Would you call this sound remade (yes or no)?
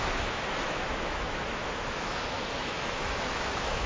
yes